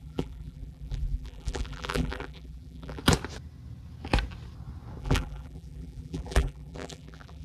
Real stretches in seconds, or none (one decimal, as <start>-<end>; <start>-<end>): 3.0-5.0